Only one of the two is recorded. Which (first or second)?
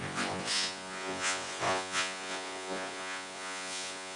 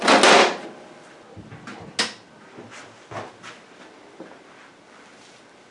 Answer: second